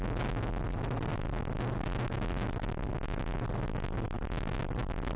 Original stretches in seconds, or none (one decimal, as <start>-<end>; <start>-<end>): 0.0-5.2

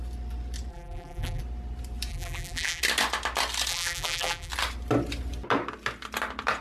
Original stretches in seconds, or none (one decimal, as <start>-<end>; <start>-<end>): 0.0-0.7; 1.4-2.1; 2.8-3.7; 4.5-6.6

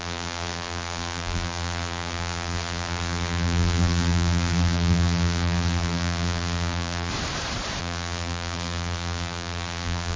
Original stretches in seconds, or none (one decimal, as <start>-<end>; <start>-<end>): 7.1-7.8

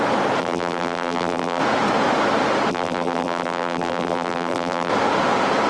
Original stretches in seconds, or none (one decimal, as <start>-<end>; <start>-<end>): 0.0-0.4; 1.6-2.7; 4.9-5.7

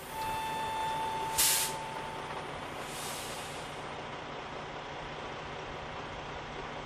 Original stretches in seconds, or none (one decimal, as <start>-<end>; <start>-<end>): 0.0-6.9